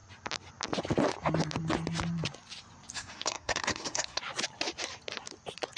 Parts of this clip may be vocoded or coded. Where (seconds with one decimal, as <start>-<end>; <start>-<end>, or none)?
2.9-4.2